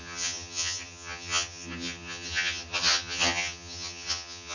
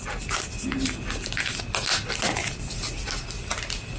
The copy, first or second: first